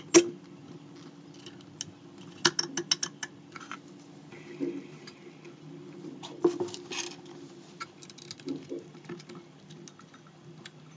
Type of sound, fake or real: real